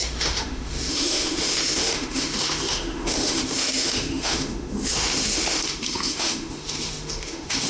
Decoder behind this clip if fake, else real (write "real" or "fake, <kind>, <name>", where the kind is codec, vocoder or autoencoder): fake, autoencoder, DAC-VAE